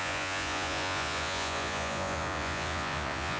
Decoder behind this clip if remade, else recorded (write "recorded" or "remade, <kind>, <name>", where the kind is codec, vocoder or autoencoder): remade, vocoder, Vocos